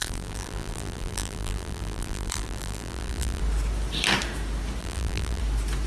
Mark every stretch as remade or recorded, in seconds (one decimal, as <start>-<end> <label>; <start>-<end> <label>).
0.0-3.4 remade; 3.4-4.8 recorded; 4.8-5.4 remade; 5.4-5.9 recorded